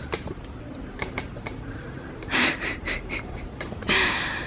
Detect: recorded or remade remade